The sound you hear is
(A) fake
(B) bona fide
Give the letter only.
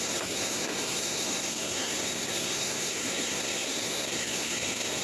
A